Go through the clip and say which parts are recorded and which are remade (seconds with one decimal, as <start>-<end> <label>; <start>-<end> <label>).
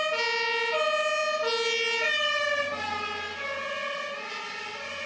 0.0-5.1 recorded